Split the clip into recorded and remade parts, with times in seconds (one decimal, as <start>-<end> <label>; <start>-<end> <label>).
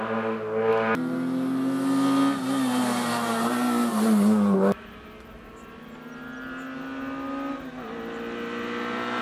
0.0-9.2 recorded